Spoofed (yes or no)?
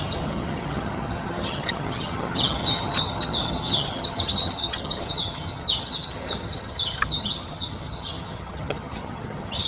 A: yes